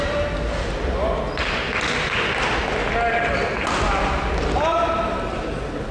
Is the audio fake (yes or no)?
no